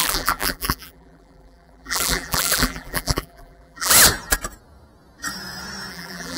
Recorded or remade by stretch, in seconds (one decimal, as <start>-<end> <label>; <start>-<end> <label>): 0.0-3.9 remade; 3.9-5.9 recorded; 5.9-6.4 remade